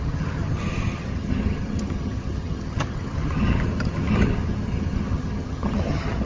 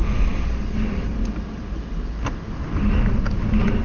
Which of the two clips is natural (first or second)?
second